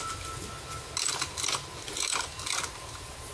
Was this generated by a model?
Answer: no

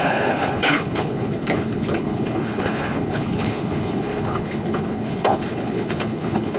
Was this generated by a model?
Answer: yes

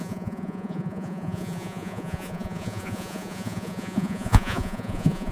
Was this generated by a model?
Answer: yes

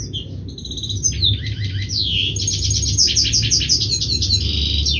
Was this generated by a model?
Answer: no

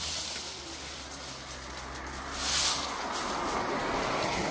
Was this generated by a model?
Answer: no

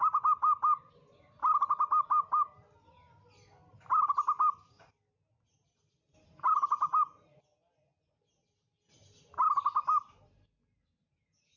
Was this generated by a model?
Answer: no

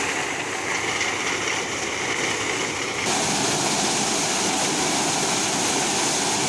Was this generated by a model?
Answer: no